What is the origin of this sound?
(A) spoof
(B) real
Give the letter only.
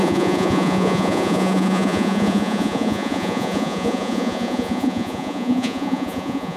A